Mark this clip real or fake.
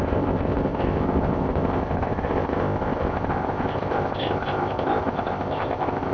fake